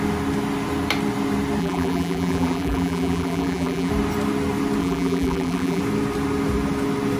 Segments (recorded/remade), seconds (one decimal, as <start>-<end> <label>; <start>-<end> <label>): 0.0-1.6 recorded; 1.6-3.9 remade; 3.9-4.8 recorded; 4.8-5.8 remade; 5.8-7.2 recorded